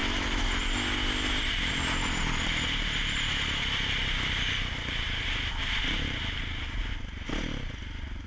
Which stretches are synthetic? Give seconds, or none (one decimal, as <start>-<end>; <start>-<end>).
5.6-6.9